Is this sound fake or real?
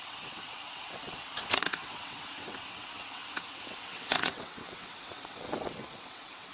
fake